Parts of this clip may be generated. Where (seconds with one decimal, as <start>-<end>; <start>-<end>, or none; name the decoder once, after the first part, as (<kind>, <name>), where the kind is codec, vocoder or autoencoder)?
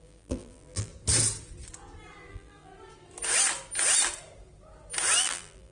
0.0-0.9 (vocoder, BigVGAN v2); 2.3-2.7; 5.2-5.7